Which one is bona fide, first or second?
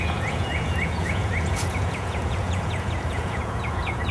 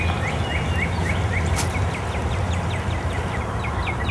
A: second